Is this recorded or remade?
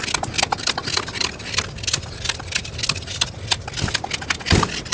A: recorded